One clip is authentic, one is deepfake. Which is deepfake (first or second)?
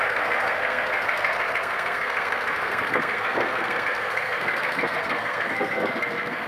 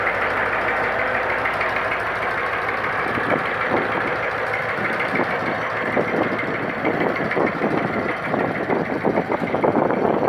first